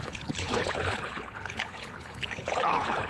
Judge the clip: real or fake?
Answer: fake